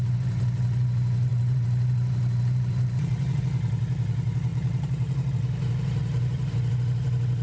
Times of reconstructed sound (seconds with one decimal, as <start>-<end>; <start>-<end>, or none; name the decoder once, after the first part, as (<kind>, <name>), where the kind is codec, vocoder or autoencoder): 1.3-3.4 (vocoder, BigVGAN v2); 4.5-5.3; 6.0-6.7